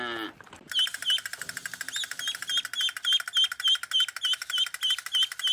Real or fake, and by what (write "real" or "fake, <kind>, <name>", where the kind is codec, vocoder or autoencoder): real